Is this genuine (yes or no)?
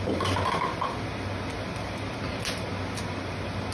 yes